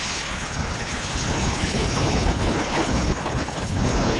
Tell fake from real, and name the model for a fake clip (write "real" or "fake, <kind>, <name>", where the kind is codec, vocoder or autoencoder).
fake, codec, HILCodec